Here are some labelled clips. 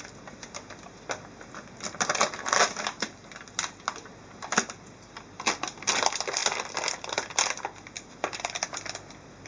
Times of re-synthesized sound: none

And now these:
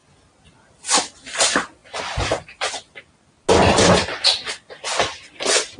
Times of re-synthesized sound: none

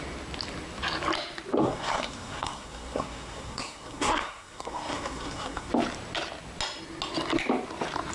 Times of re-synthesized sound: 1.6-5.7